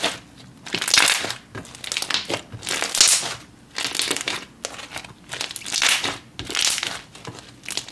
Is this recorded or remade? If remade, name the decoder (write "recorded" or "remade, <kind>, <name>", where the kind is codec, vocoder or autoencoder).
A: recorded